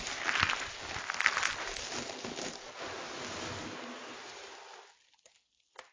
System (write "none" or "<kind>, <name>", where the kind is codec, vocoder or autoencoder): none